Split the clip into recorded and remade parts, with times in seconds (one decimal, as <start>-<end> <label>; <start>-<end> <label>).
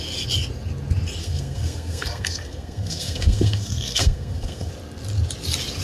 0.0-1.2 recorded; 1.2-4.7 remade; 4.7-5.8 recorded